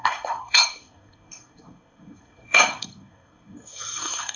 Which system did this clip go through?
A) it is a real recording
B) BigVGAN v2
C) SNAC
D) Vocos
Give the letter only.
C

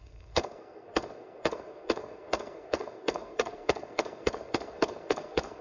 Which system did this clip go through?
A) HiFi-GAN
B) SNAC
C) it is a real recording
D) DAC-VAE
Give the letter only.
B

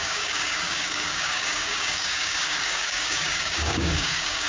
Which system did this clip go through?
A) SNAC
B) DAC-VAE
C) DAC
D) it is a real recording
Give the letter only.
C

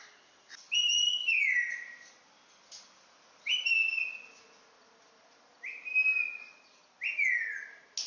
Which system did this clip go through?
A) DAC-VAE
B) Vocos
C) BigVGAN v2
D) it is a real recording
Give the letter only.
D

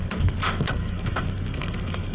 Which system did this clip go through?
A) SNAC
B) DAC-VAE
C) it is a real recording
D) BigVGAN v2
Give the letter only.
A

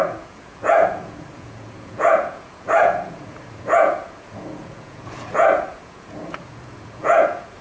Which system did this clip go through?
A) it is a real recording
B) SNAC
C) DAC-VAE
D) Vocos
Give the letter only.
D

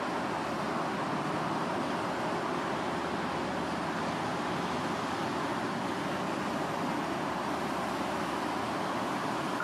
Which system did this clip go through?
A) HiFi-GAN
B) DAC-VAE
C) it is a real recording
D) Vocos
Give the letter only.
C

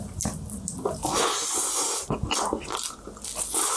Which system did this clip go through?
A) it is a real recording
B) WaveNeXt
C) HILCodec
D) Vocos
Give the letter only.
A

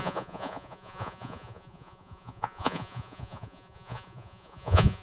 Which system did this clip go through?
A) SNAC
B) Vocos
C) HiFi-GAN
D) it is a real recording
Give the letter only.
B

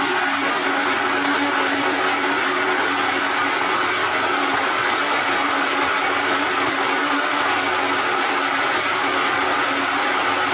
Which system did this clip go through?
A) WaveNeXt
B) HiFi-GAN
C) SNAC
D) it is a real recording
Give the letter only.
D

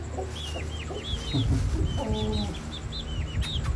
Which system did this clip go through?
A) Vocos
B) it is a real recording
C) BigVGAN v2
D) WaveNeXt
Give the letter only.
B